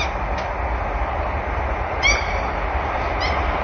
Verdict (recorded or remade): recorded